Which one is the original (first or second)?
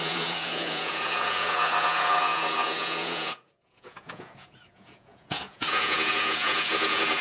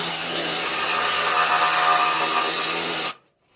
second